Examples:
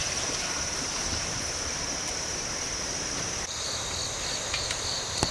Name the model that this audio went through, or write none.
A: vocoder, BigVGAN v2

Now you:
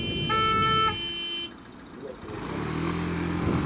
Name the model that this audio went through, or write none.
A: none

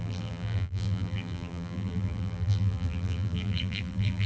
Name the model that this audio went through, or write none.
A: vocoder, BigVGAN v2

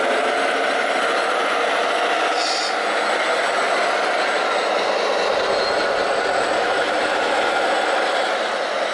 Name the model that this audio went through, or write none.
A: none